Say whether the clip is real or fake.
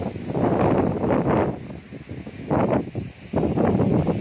real